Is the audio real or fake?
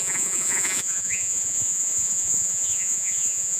fake